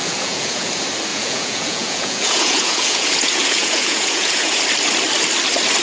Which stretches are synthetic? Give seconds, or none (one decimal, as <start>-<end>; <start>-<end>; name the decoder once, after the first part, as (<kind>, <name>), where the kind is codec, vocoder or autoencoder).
0.0-0.7 (vocoder, Vocos); 1.1-4.6